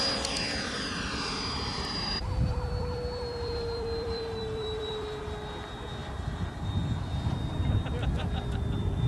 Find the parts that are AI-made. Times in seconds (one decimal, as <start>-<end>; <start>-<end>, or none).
1.7-5.2